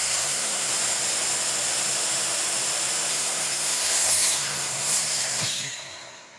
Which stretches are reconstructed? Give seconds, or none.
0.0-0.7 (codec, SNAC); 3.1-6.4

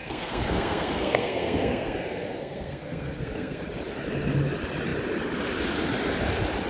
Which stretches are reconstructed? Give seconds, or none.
0.0-3.6 (codec, SNAC)